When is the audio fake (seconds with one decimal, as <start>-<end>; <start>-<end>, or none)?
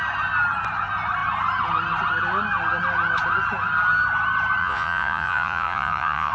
4.6-6.3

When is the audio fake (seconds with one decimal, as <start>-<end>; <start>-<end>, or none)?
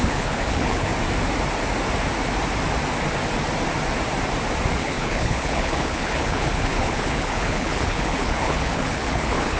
0.0-0.9; 4.7-9.6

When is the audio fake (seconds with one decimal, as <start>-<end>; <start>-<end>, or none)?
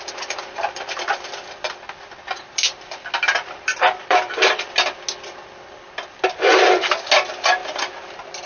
3.7-4.7